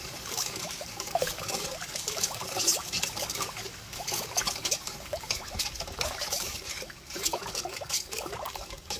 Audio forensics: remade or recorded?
remade